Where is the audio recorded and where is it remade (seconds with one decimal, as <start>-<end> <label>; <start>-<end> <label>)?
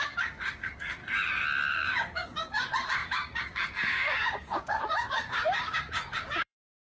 0.0-1.0 remade; 1.0-1.7 recorded; 1.7-6.9 remade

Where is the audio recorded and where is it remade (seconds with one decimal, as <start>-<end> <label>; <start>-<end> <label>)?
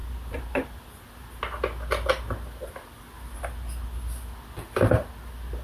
0.0-1.4 remade; 1.4-5.6 recorded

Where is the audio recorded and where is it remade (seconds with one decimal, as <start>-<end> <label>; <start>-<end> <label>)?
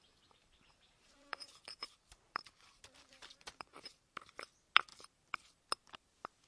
0.0-0.4 recorded; 0.4-4.3 remade; 4.3-4.9 recorded; 4.9-5.6 remade; 5.6-6.5 recorded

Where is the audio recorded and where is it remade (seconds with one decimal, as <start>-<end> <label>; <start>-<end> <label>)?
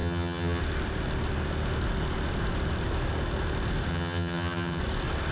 0.0-0.6 remade; 0.6-3.9 recorded; 3.9-4.8 remade; 4.8-5.3 recorded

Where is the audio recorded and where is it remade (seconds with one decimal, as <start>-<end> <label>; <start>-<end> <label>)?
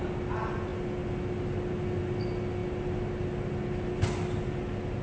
0.0-5.0 recorded